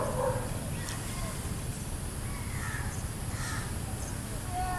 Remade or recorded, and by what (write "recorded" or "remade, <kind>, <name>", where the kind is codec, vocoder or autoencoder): recorded